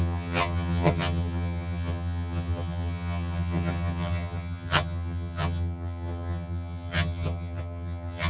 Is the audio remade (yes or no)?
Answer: yes